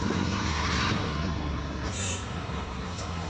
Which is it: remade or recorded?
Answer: remade